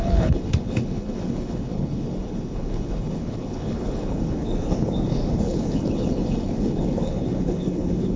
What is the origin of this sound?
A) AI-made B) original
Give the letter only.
A